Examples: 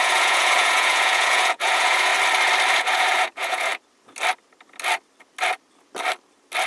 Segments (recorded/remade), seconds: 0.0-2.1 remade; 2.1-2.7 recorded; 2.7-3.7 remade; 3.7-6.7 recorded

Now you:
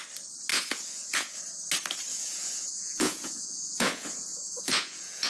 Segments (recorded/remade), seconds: 0.0-0.5 recorded; 0.5-1.4 remade; 1.4-2.1 recorded; 2.1-5.3 remade

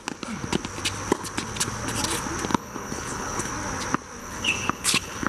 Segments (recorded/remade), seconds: 0.0-2.5 recorded; 2.5-3.5 remade; 3.5-4.2 recorded; 4.2-5.3 remade

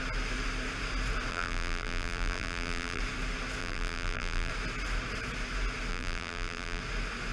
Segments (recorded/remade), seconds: 0.0-1.3 recorded; 1.3-3.0 remade; 3.0-3.6 recorded; 3.6-4.5 remade; 4.5-5.9 recorded; 5.9-6.8 remade; 6.8-7.3 recorded

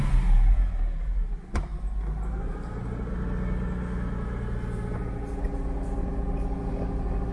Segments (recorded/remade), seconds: 0.0-7.3 recorded

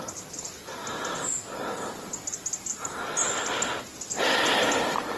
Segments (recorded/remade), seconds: 0.0-5.2 recorded

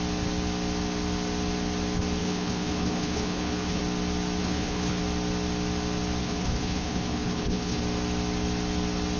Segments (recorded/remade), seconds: 0.0-2.2 recorded; 2.2-3.8 remade; 3.8-4.4 recorded; 4.4-5.0 remade; 5.0-6.2 recorded; 6.2-7.8 remade; 7.8-9.2 recorded

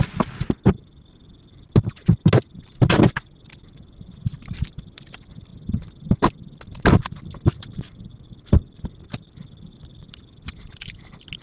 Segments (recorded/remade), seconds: 0.0-11.4 recorded